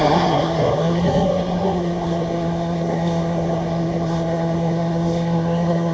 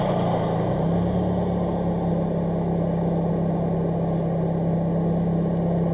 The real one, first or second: second